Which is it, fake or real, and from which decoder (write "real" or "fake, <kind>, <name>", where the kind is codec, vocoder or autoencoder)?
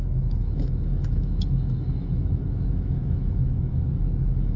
fake, autoencoder, DAC-VAE